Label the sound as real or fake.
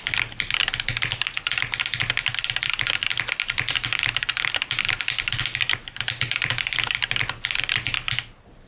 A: real